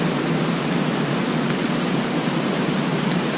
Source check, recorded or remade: recorded